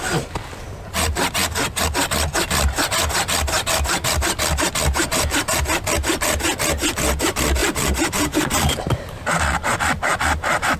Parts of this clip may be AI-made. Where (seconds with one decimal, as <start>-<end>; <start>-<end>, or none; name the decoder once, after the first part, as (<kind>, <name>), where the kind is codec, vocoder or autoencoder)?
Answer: 5.1-5.6 (vocoder, BigVGAN v2); 7.6-9.4